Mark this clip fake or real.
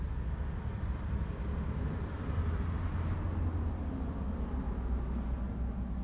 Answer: real